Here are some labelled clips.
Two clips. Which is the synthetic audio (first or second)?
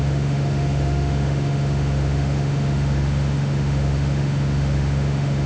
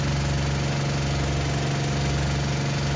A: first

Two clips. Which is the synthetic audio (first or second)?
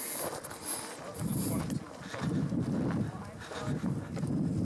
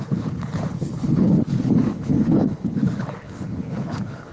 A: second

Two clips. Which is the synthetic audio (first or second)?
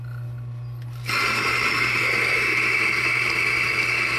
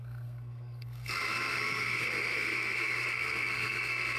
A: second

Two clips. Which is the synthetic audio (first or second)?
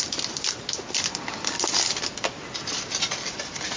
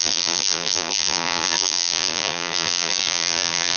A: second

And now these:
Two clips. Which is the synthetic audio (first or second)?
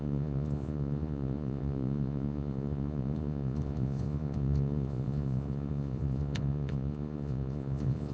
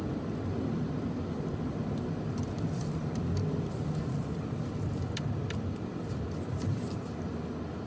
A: first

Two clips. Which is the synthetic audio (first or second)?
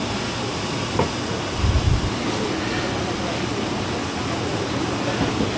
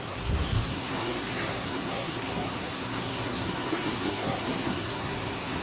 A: second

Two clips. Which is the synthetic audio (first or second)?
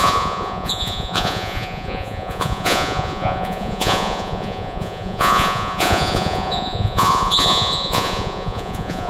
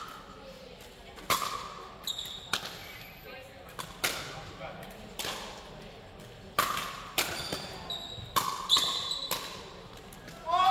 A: first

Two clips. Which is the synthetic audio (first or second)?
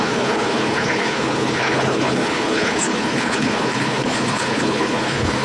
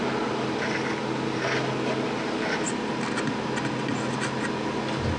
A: first